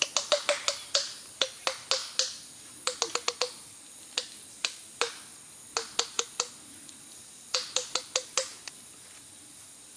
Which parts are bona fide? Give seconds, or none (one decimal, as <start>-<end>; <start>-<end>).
0.0-10.0